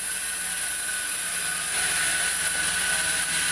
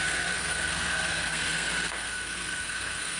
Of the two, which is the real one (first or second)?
first